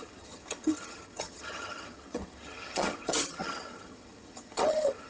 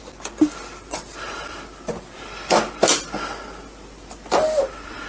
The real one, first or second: second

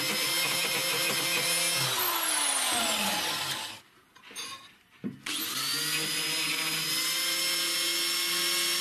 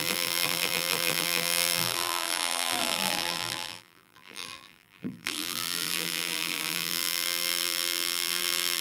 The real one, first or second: first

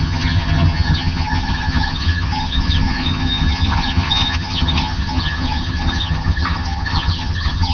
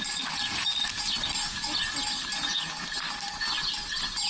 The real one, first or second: second